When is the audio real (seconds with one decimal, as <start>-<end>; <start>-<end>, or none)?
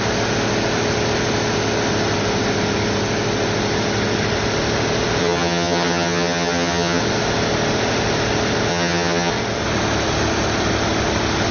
0.0-5.2; 7.0-8.7; 9.3-11.5